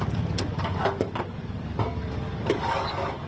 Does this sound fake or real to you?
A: fake